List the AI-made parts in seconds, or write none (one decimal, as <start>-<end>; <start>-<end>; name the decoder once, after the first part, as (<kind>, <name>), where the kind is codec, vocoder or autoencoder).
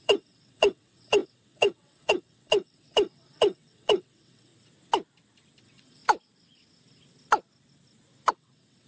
0.0-4.5 (vocoder, WaveNeXt); 5.6-6.0; 8.3-8.9